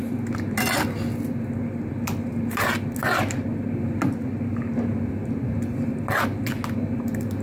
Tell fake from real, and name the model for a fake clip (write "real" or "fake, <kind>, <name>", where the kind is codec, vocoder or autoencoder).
real